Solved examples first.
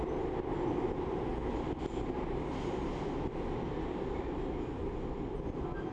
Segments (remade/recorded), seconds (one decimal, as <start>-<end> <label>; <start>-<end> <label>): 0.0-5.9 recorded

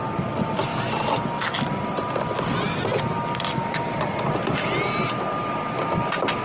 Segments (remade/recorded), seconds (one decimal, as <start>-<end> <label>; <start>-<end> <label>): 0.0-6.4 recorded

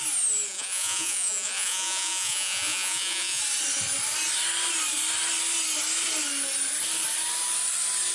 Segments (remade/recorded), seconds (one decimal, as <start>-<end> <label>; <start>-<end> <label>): 0.0-0.5 recorded; 0.5-3.4 remade; 3.4-8.1 recorded